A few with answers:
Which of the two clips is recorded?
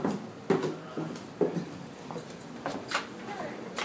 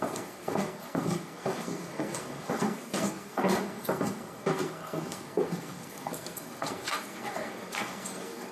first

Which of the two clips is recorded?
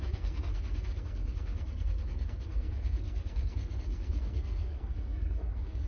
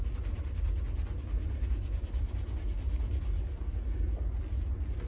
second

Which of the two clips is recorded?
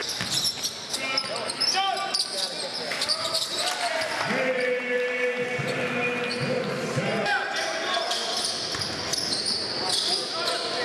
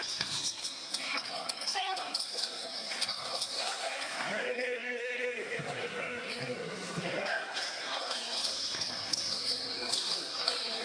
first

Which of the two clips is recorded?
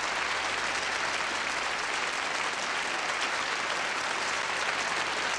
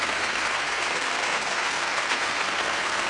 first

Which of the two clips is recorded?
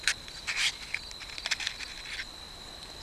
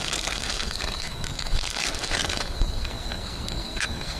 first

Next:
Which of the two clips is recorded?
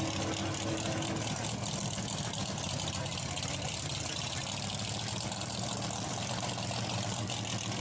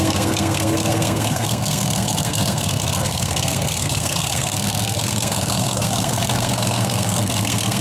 first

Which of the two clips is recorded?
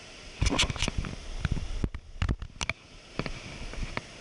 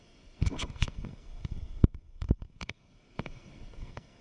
first